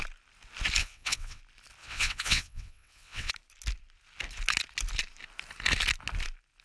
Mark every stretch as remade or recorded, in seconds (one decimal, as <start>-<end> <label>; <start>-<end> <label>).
0.0-0.8 recorded; 0.8-1.4 remade; 1.4-1.8 recorded; 1.8-3.3 remade; 3.3-6.6 recorded